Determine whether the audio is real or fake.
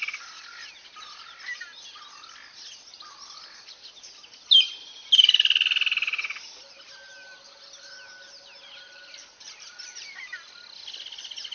real